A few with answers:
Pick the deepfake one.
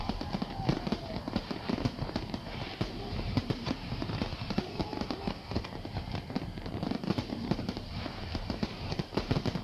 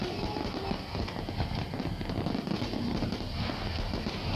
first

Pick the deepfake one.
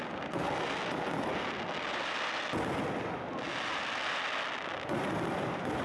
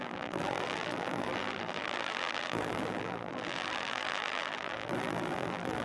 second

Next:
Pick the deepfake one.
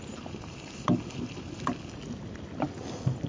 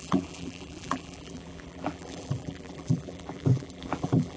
second